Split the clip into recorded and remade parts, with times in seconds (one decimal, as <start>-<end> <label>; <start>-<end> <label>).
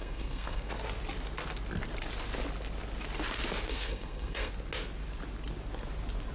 0.0-0.7 remade; 0.7-3.7 recorded; 3.7-4.5 remade; 4.5-6.3 recorded